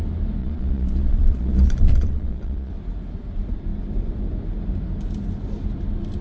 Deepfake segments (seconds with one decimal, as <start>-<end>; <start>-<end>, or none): 0.4-2.7